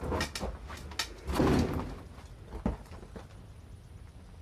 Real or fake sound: real